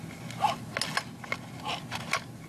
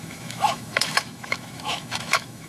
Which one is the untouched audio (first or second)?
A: first